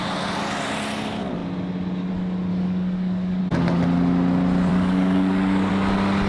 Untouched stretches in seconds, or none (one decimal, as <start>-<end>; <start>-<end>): 0.0-2.5; 3.4-4.7; 5.7-6.3

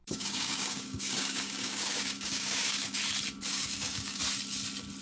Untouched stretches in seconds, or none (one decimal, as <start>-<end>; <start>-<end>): 3.0-3.5; 4.2-5.0

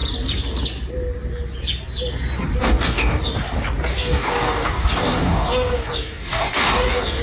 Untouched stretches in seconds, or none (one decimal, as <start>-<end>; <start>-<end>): 0.0-2.6; 3.2-3.9

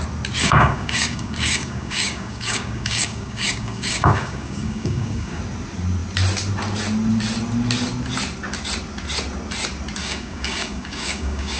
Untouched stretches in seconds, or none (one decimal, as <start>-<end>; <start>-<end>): 0.0-0.4; 5.4-10.0

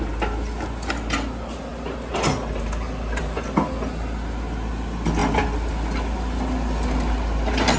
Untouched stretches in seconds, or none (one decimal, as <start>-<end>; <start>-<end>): 0.0-7.8